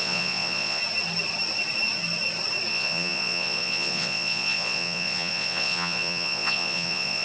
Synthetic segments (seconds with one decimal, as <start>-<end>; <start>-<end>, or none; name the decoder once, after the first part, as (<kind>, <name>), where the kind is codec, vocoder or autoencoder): 0.0-0.8 (vocoder, Vocos); 2.7-7.2